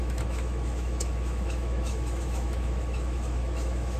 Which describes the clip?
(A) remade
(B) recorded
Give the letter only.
A